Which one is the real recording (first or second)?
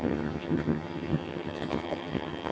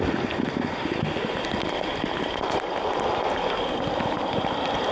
second